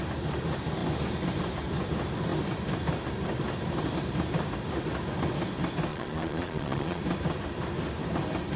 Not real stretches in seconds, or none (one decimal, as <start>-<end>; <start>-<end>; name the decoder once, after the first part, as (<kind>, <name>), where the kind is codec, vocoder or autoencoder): 5.9-7.0 (vocoder, Vocos)